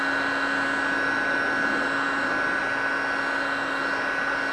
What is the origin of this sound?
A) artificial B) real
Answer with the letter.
B